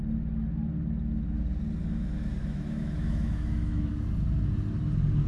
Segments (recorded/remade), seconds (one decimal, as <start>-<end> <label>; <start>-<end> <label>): 0.0-2.4 recorded; 2.4-3.9 remade; 3.9-5.3 recorded